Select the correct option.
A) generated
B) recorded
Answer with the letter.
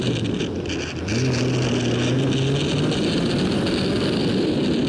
B